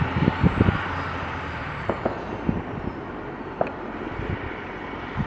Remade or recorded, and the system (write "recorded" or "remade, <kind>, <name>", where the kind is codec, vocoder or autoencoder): recorded